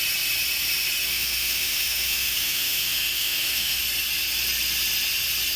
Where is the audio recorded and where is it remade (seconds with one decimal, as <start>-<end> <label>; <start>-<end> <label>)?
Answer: 0.0-1.1 recorded; 1.1-3.8 remade; 3.8-5.6 recorded